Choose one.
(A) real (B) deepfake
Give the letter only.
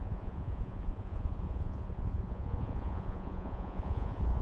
B